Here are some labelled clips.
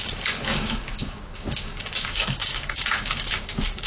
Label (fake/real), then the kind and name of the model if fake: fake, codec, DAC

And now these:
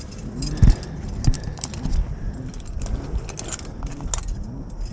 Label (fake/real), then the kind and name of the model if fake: real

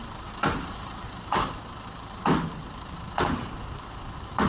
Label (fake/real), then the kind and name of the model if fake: fake, vocoder, BigVGAN v2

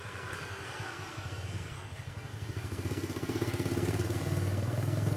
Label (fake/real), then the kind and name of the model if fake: fake, codec, SNAC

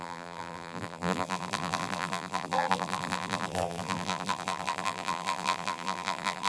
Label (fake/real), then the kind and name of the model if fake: fake, vocoder, BigVGAN v2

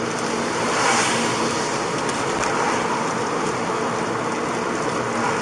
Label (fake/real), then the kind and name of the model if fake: real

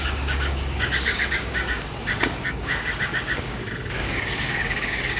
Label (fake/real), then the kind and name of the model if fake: fake, codec, DAC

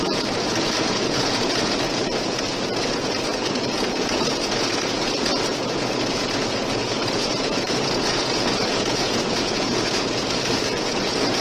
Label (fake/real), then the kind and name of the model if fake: fake, vocoder, Vocos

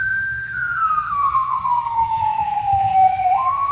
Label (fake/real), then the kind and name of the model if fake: fake, codec, SNAC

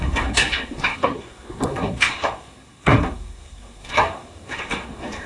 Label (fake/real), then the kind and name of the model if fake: fake, codec, SNAC